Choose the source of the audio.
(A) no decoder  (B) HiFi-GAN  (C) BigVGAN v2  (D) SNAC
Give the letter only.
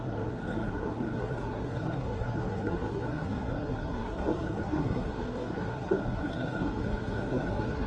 D